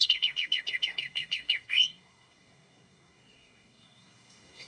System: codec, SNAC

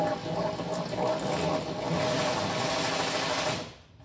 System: none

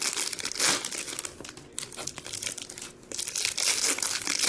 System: none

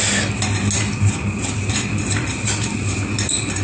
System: none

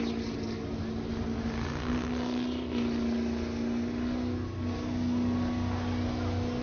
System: none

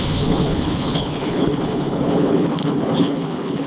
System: codec, HILCodec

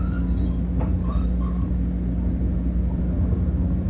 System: none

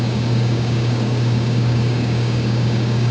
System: codec, DAC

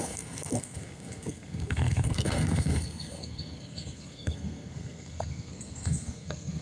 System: codec, SNAC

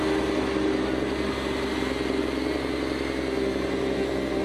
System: none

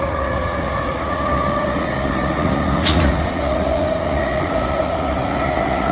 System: vocoder, Vocos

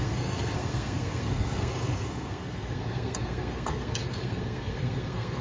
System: codec, SNAC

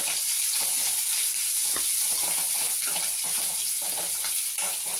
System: none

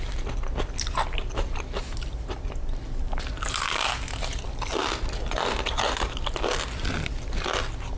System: none